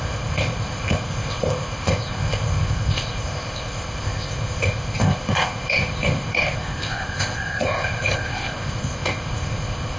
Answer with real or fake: fake